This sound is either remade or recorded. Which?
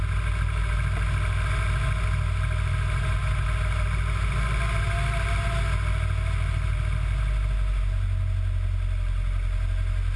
recorded